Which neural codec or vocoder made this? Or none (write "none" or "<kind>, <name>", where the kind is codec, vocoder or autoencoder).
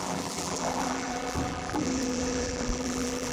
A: vocoder, BigVGAN v2